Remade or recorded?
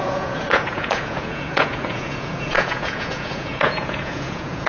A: remade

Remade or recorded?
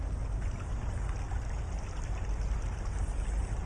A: recorded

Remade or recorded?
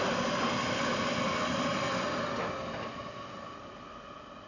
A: recorded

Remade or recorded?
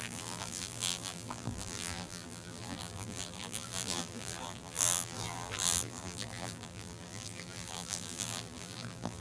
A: remade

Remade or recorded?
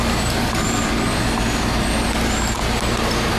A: recorded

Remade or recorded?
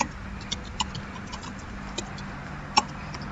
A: recorded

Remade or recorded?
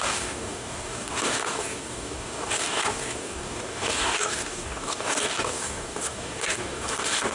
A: remade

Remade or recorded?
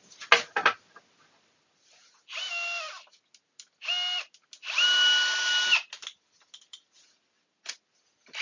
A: recorded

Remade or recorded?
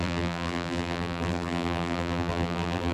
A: remade